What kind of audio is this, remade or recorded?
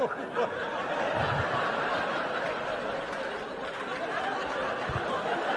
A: recorded